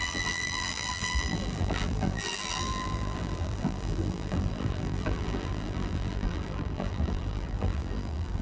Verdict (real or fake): fake